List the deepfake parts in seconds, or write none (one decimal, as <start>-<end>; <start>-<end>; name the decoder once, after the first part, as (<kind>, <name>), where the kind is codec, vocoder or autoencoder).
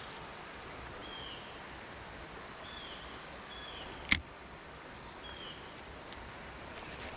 none